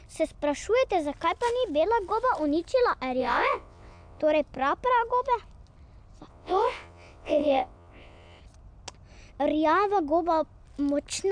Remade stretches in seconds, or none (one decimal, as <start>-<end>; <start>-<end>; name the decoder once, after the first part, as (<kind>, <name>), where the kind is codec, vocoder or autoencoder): 3.2-4.2 (vocoder, WaveNeXt); 6.3-8.4